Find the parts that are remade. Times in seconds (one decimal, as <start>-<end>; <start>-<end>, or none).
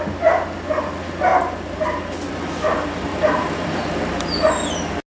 3.1-4.5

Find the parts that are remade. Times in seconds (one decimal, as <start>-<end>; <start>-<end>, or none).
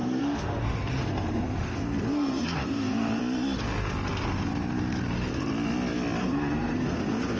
0.0-3.2; 6.2-7.4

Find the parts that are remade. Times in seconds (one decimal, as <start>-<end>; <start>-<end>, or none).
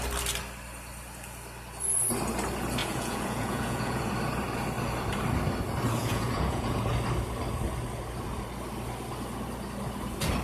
2.8-4.1; 6.0-6.8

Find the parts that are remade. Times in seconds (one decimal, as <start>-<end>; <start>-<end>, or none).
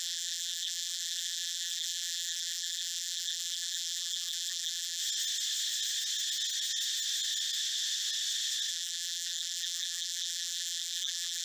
0.0-5.0; 8.7-11.4